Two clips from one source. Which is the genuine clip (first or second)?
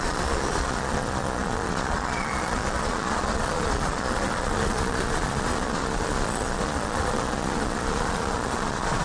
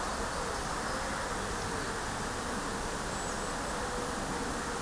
second